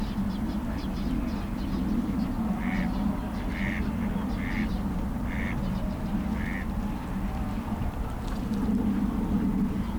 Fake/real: real